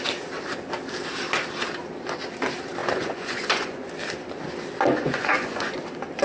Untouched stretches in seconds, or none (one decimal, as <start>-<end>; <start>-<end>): 0.0-2.8; 3.9-4.9; 5.8-6.2